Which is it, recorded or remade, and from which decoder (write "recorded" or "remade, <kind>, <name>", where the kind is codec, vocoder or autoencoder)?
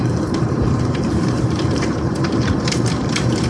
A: remade, vocoder, BigVGAN v2